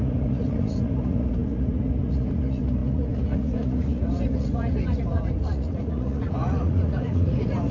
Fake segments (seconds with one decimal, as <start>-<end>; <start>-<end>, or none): 0.0-7.7